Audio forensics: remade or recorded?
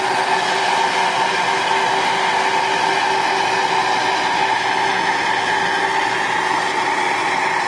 recorded